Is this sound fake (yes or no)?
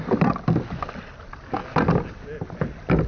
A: no